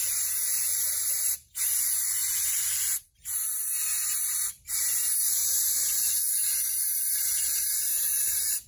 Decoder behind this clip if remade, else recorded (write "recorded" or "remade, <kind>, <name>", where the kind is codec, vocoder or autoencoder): remade, vocoder, BigVGAN v2